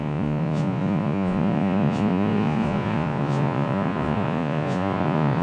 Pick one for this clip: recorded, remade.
remade